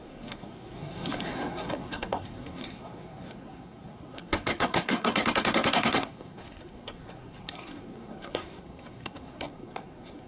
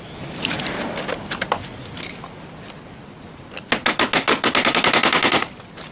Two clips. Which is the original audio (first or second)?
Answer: second